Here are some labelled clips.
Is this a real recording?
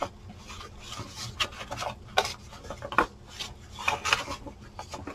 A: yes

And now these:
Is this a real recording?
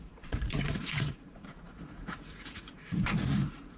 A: no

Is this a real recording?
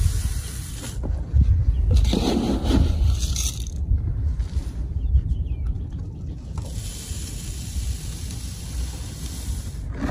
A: yes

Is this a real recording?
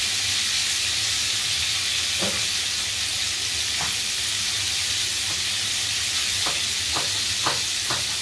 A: yes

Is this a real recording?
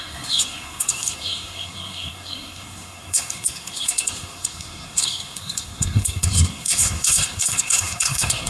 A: no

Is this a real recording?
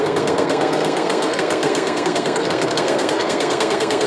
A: no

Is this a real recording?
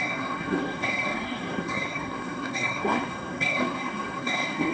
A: no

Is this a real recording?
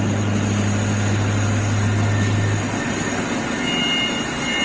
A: yes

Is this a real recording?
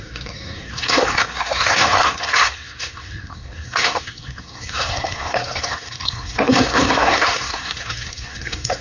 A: no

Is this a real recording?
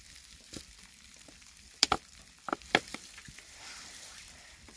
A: no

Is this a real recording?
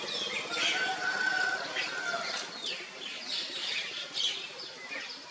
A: yes